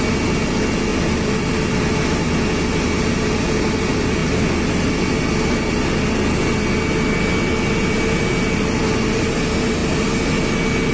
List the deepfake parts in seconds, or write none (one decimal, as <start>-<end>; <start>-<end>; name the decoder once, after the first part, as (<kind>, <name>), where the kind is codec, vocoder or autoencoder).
0.9-1.8 (vocoder, BigVGAN v2)